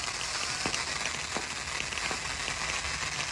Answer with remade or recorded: recorded